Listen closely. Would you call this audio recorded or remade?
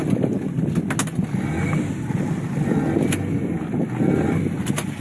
recorded